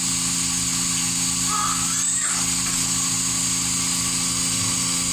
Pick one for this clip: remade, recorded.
recorded